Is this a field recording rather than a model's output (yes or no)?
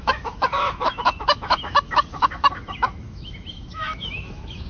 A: no